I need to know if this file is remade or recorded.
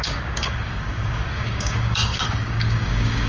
remade